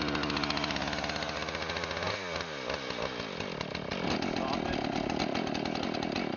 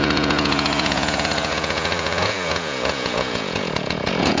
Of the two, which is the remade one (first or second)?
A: second